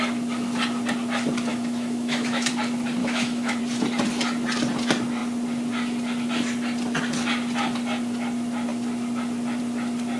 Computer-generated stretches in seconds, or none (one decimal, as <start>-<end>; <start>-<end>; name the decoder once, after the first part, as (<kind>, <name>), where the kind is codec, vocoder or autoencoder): 1.5-2.5 (autoencoder, DAC-VAE); 3.0-3.6